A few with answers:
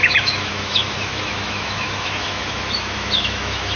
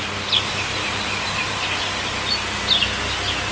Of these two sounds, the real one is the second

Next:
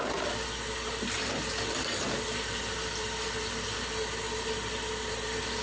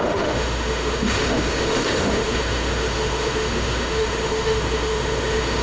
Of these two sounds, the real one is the first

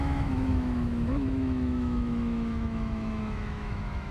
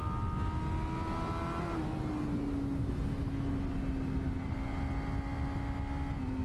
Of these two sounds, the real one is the second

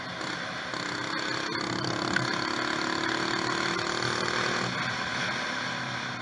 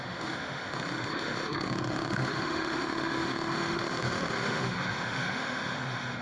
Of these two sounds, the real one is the first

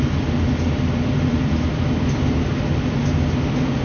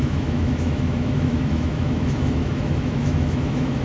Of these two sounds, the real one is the first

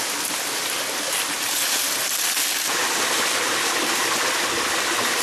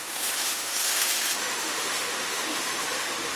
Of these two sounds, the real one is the first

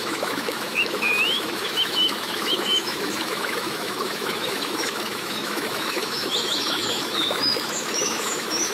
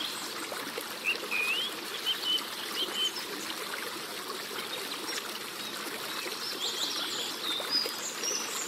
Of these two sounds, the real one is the second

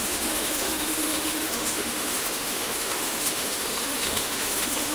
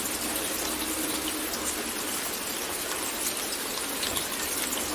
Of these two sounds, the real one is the second